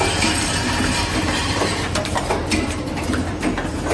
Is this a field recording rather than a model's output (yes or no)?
no